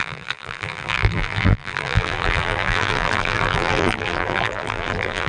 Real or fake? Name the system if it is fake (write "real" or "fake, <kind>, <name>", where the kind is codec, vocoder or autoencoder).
fake, vocoder, BigVGAN v2